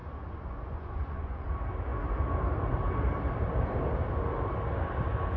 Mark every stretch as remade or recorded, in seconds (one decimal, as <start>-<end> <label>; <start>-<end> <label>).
0.0-1.5 remade; 1.5-5.4 recorded